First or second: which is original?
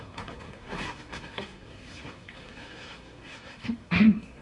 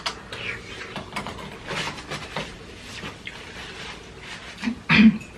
second